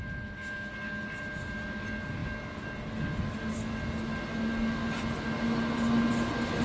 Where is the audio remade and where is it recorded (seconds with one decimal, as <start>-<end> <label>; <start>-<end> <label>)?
0.0-0.7 remade; 0.7-6.6 recorded